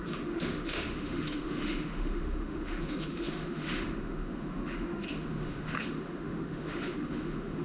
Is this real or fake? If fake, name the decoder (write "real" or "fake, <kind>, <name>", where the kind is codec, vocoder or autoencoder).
fake, autoencoder, DAC-VAE